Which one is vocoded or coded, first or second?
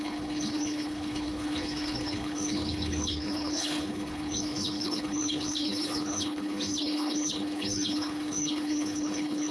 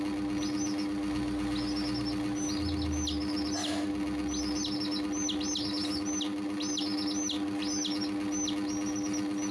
first